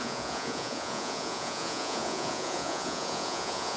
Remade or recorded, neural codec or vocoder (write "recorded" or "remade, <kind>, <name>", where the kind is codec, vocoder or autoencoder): remade, vocoder, Vocos